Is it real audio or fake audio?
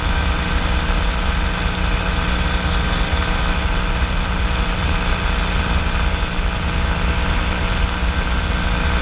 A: real